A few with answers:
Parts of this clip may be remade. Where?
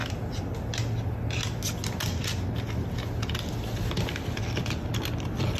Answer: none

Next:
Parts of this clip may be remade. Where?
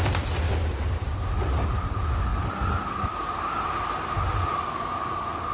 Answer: none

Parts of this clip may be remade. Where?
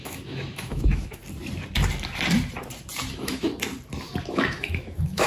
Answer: 0.0-1.2; 3.1-3.5; 4.2-5.3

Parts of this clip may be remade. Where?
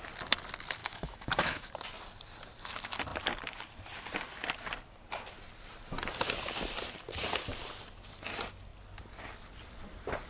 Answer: 0.8-1.7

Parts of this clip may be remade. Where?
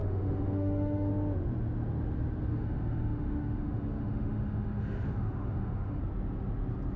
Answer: 0.0-1.1; 2.5-6.0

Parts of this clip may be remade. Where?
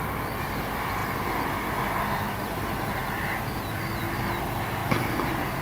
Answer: none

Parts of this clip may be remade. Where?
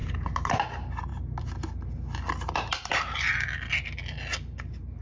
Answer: none